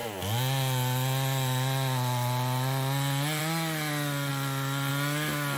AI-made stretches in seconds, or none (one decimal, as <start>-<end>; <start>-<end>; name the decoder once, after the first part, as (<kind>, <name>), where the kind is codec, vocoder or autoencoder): none